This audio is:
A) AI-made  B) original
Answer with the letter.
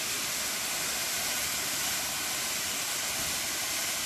B